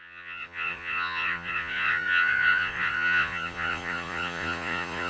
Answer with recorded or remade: remade